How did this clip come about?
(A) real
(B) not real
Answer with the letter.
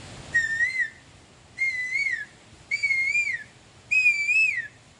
A